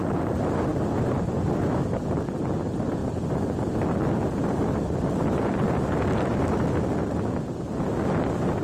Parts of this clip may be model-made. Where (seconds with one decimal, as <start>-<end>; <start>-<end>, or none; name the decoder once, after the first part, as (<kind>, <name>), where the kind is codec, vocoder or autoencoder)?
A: none